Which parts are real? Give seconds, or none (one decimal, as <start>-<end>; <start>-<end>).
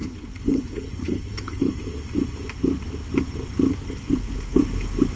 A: 1.7-3.7; 4.6-5.2